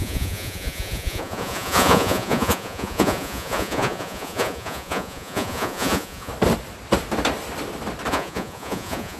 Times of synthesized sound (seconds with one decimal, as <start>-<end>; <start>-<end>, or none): 0.0-6.3; 8.1-9.2